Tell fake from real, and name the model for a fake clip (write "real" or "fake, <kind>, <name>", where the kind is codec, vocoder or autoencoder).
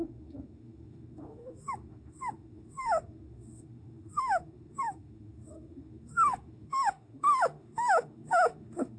fake, autoencoder, DAC-VAE